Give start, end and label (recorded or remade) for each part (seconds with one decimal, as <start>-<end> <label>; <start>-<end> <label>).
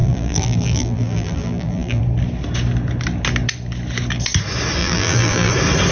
0.0-2.0 remade; 2.0-4.8 recorded; 4.8-5.5 remade; 5.5-5.9 recorded